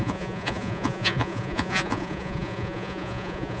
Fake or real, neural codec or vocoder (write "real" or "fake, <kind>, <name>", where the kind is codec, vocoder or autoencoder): fake, vocoder, Vocos